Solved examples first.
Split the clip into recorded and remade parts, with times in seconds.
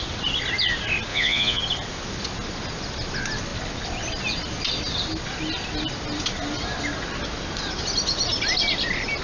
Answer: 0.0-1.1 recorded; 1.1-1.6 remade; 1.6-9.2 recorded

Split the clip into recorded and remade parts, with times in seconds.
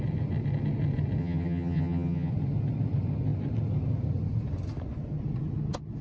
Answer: 0.0-1.2 recorded; 1.2-2.3 remade; 2.3-6.0 recorded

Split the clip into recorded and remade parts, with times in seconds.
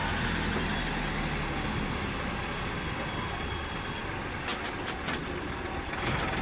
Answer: 0.0-6.4 recorded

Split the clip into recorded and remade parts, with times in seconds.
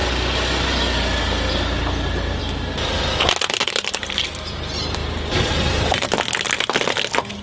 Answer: 0.0-5.0 recorded; 5.0-6.1 remade; 6.1-7.4 recorded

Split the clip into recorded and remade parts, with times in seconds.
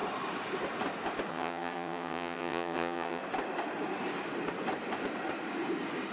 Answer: 0.0-1.3 recorded; 1.3-3.2 remade; 3.2-6.1 recorded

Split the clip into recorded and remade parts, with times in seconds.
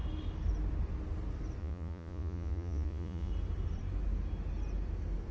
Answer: 0.0-1.6 recorded; 1.6-3.3 remade; 3.3-5.3 recorded